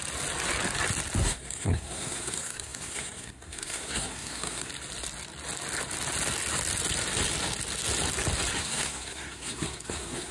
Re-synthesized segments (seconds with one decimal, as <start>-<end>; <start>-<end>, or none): 1.2-4.7; 8.6-10.3